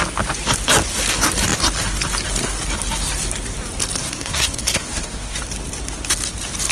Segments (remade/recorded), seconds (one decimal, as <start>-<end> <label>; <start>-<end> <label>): 0.0-4.0 recorded; 4.0-5.4 remade; 5.4-6.7 recorded